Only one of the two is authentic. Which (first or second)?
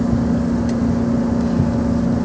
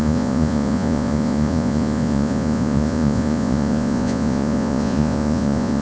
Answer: first